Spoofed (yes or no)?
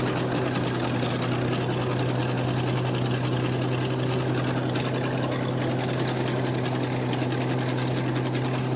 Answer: no